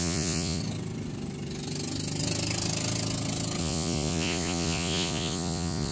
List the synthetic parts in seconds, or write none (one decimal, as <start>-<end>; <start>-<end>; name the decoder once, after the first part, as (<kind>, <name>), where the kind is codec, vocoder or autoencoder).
0.0-0.6 (vocoder, Vocos); 3.6-5.9